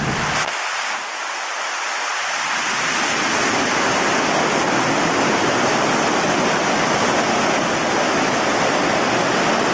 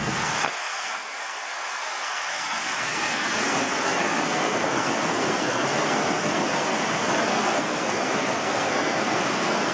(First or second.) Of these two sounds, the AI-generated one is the second